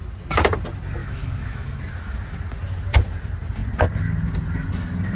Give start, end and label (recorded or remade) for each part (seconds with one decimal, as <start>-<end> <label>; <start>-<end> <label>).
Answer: 0.0-1.0 recorded; 1.0-1.8 remade; 1.8-5.2 recorded